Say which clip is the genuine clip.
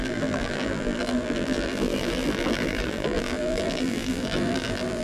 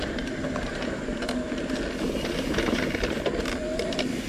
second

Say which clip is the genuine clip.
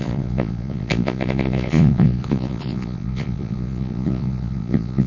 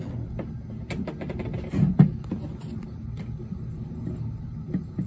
second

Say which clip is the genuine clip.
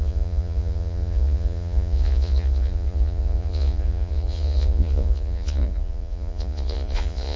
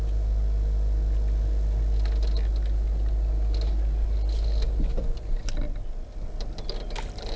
second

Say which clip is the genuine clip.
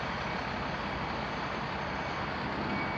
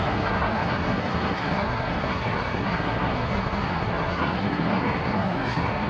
first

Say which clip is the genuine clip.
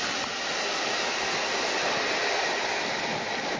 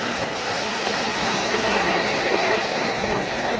first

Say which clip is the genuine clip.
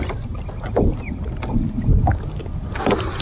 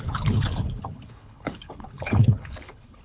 first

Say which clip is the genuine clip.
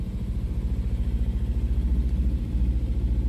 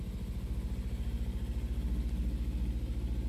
second